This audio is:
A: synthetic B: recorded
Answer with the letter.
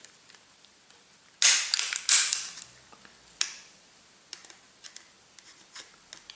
B